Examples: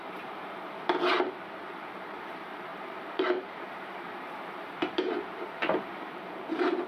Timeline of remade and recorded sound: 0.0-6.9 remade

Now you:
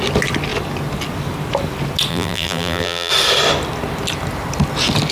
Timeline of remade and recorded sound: 0.0-2.1 recorded; 2.1-3.1 remade; 3.1-5.1 recorded

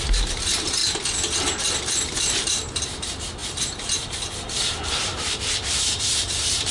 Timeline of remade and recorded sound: 0.0-0.8 remade; 0.8-1.8 recorded; 1.8-6.7 remade

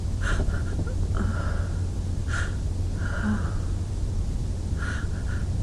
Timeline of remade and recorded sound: 0.0-0.7 remade; 0.7-2.2 recorded; 2.2-5.6 remade

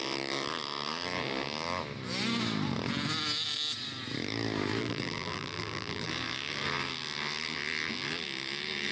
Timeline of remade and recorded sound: 0.0-4.8 recorded; 4.8-6.1 remade; 6.1-8.9 recorded